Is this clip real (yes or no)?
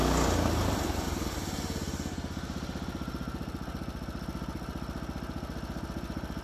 yes